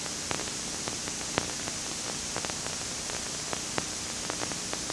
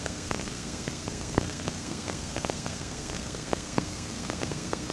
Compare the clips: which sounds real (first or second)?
first